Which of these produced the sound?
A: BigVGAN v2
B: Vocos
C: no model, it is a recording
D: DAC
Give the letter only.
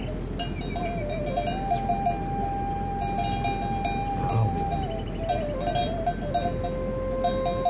C